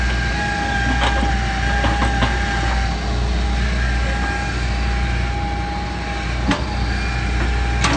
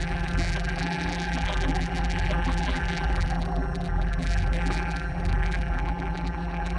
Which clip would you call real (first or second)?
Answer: first